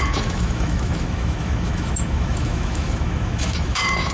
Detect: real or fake fake